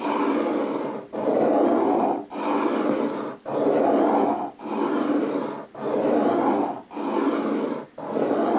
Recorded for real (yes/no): yes